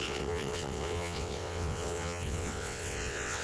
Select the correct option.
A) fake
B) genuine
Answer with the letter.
A